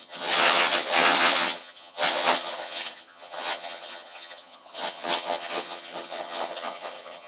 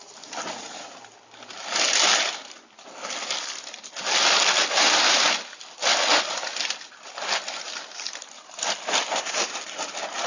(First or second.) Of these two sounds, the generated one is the first